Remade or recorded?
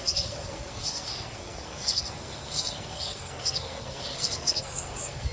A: remade